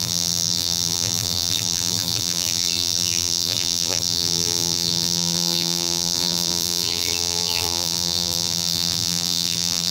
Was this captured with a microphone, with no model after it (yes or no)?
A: no